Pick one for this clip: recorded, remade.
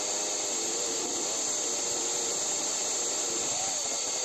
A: recorded